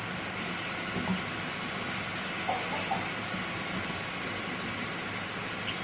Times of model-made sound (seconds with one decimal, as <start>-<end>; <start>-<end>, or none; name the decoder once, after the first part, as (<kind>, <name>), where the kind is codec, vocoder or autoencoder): none